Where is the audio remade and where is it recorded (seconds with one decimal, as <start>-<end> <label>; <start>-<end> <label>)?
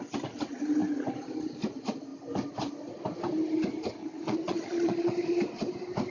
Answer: 0.0-4.0 recorded; 4.0-5.4 remade; 5.4-6.1 recorded